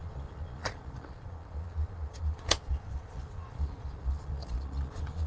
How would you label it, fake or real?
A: fake